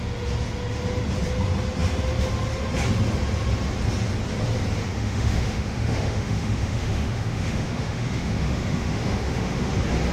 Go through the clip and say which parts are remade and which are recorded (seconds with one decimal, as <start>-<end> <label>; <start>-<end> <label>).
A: 0.0-4.9 recorded; 4.9-9.7 remade; 9.7-10.1 recorded

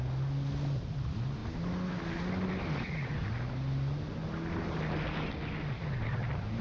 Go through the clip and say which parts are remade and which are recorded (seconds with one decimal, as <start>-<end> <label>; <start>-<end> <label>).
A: 0.0-6.6 recorded